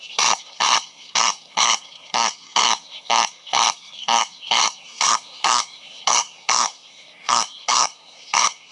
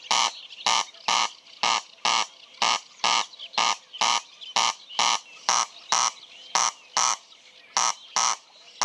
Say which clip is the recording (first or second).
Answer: second